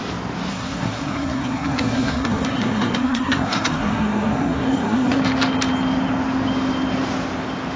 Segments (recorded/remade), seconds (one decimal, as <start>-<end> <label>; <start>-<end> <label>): 0.0-0.5 recorded; 0.5-5.2 remade; 5.2-7.8 recorded